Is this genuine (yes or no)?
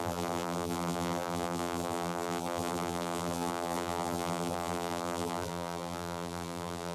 no